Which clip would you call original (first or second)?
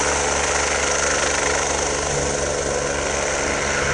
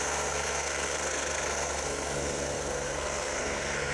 first